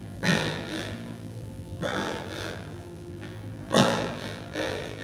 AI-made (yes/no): yes